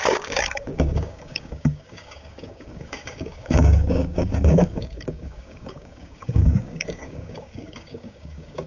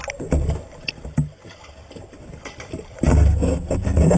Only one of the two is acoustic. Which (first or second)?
second